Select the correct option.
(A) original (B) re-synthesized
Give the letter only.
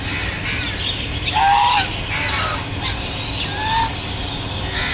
A